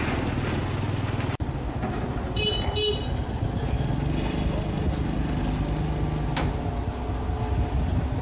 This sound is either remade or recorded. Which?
recorded